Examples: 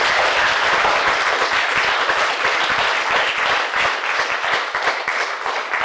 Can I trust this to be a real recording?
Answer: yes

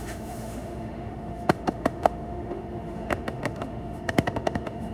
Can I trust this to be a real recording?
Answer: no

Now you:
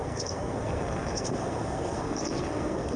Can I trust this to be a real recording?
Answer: no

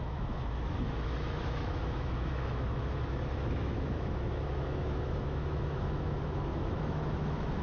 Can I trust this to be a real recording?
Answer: no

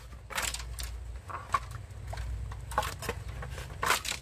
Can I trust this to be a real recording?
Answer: yes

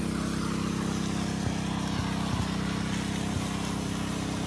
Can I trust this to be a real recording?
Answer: yes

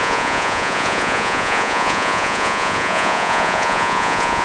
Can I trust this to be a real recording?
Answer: no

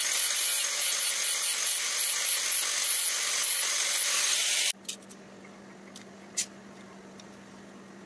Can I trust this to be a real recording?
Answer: yes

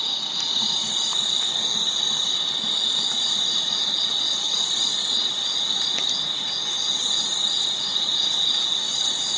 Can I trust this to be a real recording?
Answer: yes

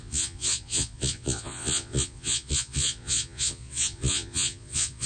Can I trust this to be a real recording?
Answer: no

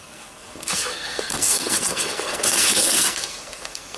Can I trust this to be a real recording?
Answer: no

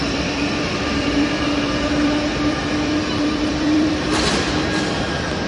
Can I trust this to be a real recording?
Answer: no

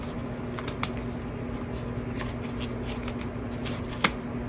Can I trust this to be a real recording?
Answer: yes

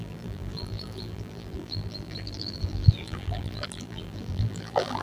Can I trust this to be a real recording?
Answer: no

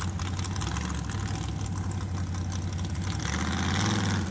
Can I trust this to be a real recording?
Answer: yes